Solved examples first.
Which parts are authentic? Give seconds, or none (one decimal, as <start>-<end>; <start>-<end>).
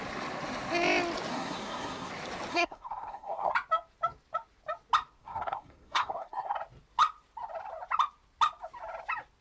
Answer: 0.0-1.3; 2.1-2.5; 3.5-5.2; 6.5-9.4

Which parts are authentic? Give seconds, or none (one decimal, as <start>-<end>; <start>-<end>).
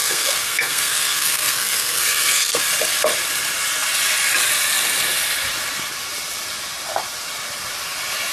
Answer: 2.6-8.3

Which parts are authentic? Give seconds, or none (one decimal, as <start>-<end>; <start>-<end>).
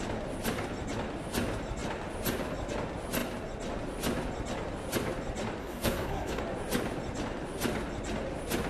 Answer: 0.0-5.6; 6.4-8.7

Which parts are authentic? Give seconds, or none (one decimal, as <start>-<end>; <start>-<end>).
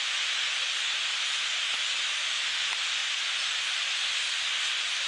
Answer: 0.0-5.1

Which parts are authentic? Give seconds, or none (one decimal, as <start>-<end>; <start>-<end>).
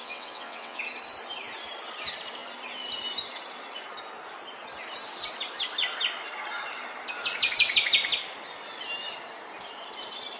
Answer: 0.8-10.4